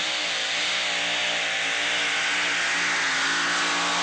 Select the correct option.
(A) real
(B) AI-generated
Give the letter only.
A